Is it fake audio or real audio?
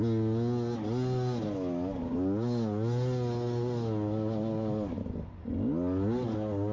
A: real